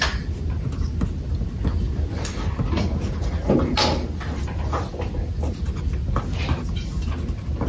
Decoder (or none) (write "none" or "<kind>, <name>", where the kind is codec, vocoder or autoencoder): none